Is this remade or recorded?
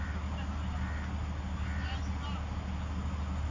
recorded